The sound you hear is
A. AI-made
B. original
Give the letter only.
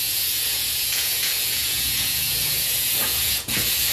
A